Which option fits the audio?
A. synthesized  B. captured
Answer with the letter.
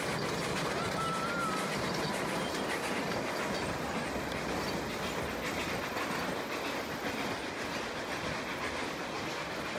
B